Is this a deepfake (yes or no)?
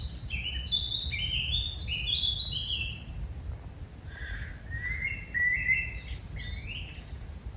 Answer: no